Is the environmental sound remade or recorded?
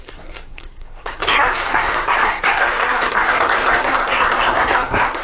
remade